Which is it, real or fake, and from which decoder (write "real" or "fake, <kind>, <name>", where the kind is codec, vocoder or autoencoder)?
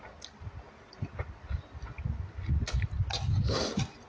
real